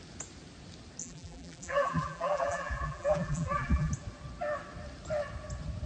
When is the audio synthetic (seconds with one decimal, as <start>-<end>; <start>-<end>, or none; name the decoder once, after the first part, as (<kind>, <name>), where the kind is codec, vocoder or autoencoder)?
1.0-3.9 (vocoder, BigVGAN v2)